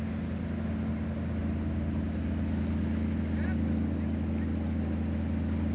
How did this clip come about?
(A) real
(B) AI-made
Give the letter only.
A